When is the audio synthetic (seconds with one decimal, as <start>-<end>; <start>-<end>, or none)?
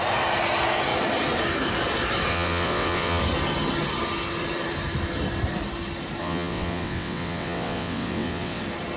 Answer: 2.3-3.2; 6.2-8.6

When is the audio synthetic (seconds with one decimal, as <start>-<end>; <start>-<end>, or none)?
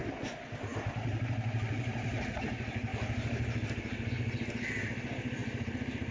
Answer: 0.7-2.4; 5.4-6.1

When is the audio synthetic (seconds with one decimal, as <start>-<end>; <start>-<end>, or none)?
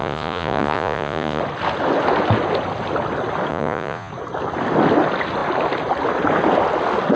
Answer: 0.0-1.4; 3.5-4.1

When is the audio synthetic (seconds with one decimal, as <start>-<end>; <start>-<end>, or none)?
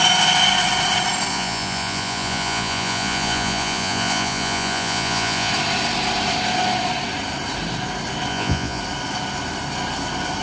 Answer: 1.3-5.5; 8.3-8.8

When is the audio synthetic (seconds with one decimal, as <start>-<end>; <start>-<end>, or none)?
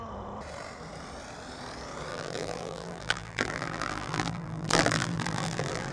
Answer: 2.1-5.9